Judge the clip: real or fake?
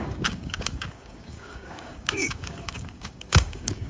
fake